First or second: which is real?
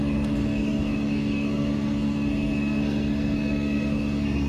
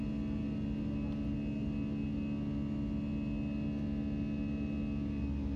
second